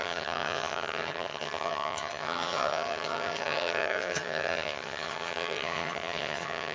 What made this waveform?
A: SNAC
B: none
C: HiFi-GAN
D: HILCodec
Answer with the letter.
C